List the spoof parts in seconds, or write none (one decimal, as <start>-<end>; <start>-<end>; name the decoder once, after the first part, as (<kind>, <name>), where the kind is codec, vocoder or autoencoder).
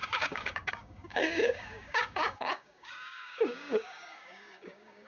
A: 0.0-5.1 (codec, DAC)